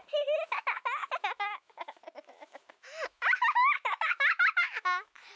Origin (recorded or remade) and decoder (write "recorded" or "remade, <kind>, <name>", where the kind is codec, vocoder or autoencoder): remade, autoencoder, DAC-VAE